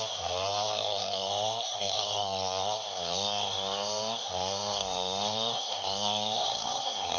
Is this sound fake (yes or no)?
yes